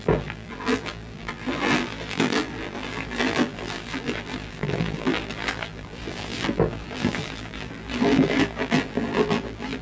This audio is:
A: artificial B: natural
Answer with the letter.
A